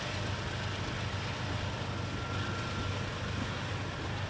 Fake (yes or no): no